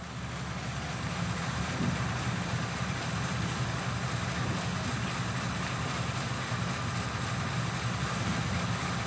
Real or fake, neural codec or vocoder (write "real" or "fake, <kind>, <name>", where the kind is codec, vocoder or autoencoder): real